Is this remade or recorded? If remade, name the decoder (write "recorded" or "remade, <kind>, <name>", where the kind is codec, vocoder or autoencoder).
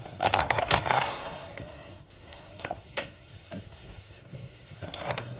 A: remade, codec, SNAC